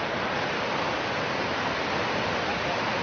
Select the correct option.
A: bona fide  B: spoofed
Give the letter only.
A